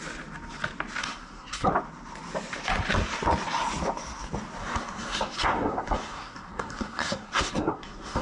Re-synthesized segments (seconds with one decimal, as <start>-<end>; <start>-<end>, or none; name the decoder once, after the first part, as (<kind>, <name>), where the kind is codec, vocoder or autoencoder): 1.0-1.7 (codec, SNAC); 4.6-8.2